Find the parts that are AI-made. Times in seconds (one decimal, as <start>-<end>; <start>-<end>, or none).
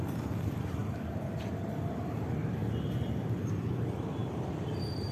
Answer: none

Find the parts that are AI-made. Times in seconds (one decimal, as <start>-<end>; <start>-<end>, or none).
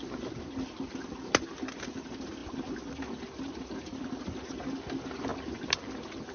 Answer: none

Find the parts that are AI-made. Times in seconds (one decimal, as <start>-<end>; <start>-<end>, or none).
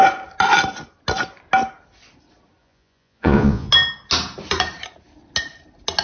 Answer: 2.6-3.7